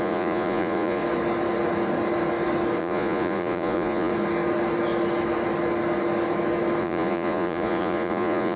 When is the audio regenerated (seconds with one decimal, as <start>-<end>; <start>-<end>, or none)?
0.0-1.0; 2.8-4.1; 6.8-8.6

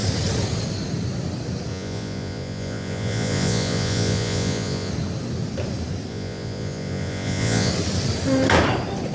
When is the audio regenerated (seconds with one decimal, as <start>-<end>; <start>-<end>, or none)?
1.7-4.9; 6.1-7.7

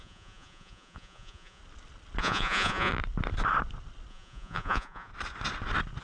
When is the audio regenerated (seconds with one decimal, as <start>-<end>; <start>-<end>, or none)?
0.0-1.6; 2.2-2.9; 4.1-5.1

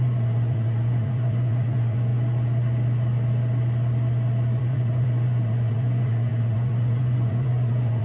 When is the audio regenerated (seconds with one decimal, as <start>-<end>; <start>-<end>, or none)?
0.0-2.1; 4.6-8.0

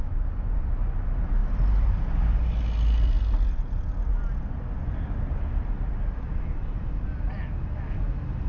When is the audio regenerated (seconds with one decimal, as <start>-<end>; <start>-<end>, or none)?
none

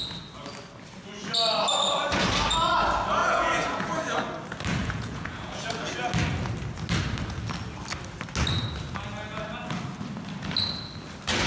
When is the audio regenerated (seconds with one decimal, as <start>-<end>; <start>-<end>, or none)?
3.2-3.8; 4.8-5.7

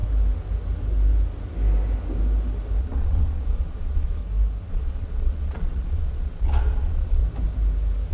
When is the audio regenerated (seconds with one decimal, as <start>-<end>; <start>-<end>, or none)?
2.8-4.2; 4.7-7.2

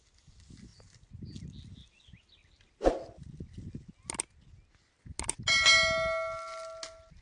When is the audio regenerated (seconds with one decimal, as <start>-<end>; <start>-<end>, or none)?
none